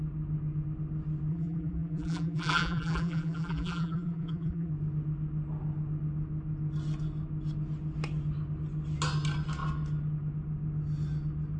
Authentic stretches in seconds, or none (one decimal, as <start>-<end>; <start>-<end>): 0.0-1.3; 4.7-11.6